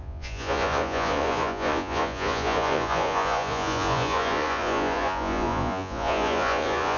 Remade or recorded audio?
remade